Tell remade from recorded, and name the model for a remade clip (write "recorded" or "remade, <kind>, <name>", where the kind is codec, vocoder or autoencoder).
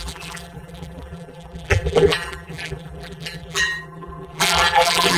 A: remade, vocoder, BigVGAN v2